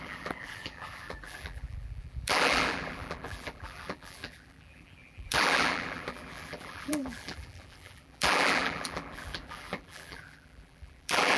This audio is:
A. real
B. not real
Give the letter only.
B